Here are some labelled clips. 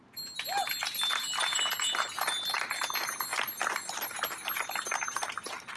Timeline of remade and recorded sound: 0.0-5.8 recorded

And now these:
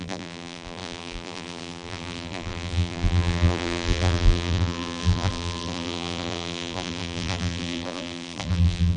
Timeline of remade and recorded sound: 0.0-9.0 remade

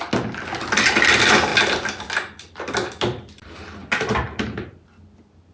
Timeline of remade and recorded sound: 0.0-5.5 recorded